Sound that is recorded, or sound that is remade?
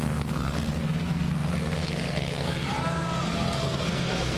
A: remade